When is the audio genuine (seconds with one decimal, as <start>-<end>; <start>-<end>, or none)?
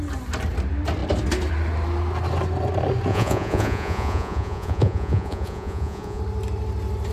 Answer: 0.0-3.1; 6.2-7.1